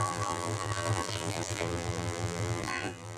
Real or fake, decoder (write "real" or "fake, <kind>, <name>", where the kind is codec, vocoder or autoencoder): fake, vocoder, BigVGAN v2